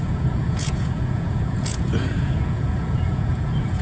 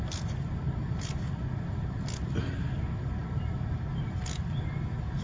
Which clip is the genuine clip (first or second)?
second